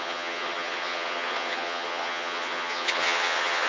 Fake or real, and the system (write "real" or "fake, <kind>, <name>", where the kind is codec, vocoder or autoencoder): fake, vocoder, HiFi-GAN